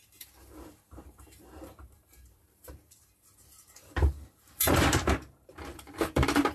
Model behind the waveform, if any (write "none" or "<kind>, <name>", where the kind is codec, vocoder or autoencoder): vocoder, BigVGAN v2